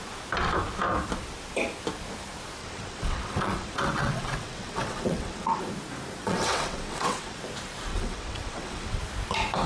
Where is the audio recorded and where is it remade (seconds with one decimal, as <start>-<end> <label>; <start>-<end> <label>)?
0.0-2.6 recorded; 2.6-5.6 remade; 5.6-6.2 recorded; 6.2-7.4 remade; 7.4-7.9 recorded; 7.9-9.0 remade; 9.0-9.7 recorded

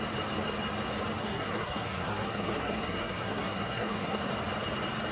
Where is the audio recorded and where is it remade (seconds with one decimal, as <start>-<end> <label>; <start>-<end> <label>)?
0.0-1.2 recorded; 1.2-4.3 remade; 4.3-5.1 recorded

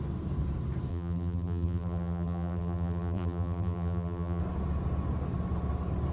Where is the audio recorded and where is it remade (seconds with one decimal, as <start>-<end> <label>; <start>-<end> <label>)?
0.0-0.9 recorded; 0.9-4.4 remade; 4.4-6.1 recorded

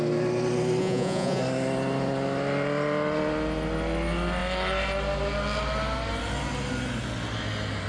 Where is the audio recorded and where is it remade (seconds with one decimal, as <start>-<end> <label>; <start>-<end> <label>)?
0.0-0.8 recorded; 0.8-1.4 remade; 1.4-7.9 recorded

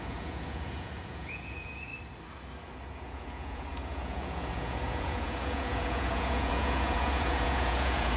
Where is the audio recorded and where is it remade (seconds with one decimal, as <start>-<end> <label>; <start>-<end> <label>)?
0.0-1.9 remade; 1.9-2.9 recorded; 2.9-8.2 remade

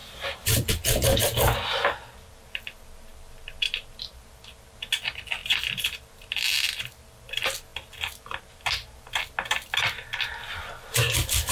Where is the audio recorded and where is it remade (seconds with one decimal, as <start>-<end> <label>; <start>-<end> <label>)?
0.0-0.7 remade; 0.7-5.4 recorded; 5.4-6.1 remade; 6.1-11.5 recorded

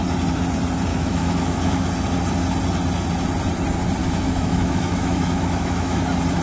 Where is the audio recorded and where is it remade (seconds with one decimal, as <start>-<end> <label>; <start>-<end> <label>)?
0.0-0.9 recorded; 0.9-1.9 remade; 1.9-4.0 recorded; 4.0-6.0 remade; 6.0-6.4 recorded